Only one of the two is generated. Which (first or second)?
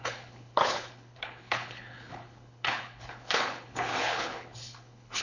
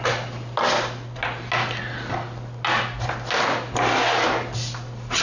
first